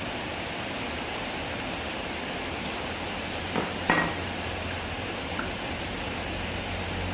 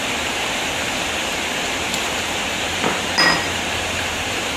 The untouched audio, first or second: first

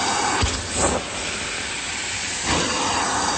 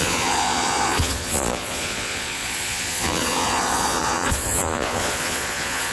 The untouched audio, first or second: first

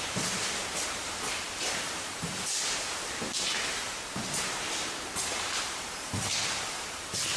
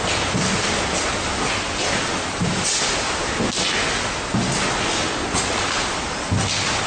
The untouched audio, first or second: second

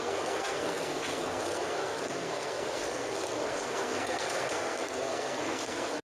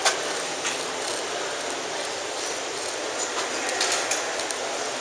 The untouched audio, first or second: second